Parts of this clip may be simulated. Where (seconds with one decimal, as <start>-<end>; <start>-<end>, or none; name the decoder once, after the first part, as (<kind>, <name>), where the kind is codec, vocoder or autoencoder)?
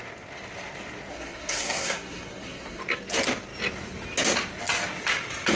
1.1-2.8 (codec, SNAC)